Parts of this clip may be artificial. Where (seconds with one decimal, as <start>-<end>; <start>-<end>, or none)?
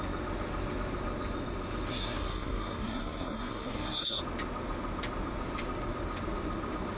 1.9-4.2